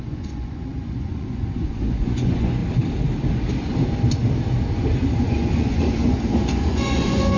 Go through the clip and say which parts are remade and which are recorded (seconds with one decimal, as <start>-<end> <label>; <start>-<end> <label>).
0.0-2.6 remade; 2.6-5.2 recorded; 5.2-7.4 remade